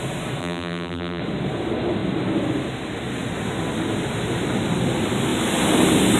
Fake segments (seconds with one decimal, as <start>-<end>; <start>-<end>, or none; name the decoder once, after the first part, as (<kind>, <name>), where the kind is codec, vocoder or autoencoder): 0.4-1.2 (vocoder, BigVGAN v2)